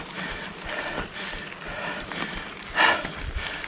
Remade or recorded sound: recorded